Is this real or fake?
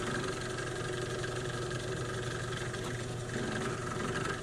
real